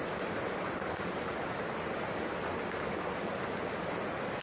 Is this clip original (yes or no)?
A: yes